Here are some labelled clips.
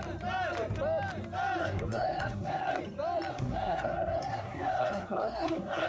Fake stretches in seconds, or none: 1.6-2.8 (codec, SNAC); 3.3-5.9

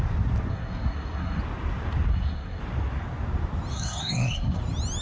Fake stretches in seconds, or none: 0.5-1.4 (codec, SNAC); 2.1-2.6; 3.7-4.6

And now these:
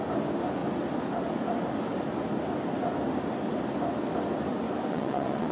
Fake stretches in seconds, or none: 4.9-5.5 (vocoder, WaveNeXt)

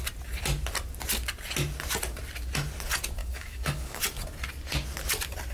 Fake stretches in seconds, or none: 3.2-4.0 (codec, DAC)